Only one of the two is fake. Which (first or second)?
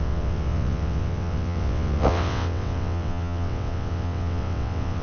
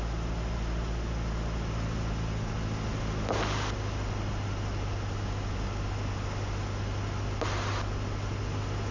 first